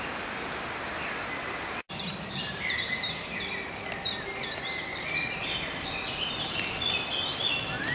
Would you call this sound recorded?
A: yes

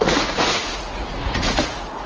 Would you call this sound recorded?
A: no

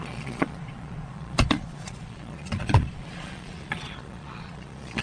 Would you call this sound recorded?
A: no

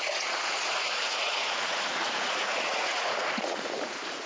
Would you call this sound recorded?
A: no